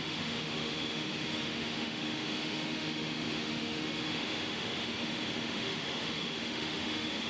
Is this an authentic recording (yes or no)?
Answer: no